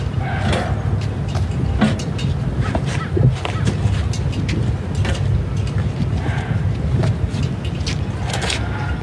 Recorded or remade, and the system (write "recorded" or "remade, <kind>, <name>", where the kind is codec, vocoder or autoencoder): recorded